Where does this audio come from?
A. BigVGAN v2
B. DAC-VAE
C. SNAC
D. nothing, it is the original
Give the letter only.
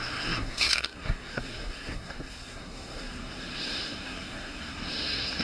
C